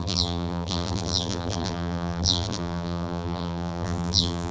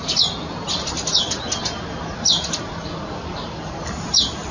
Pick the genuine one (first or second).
second